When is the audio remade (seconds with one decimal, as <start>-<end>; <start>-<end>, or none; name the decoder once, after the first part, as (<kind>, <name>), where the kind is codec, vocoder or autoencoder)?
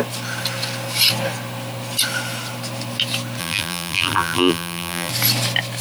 3.4-5.1 (vocoder, BigVGAN v2)